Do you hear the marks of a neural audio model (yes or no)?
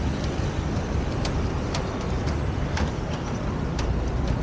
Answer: yes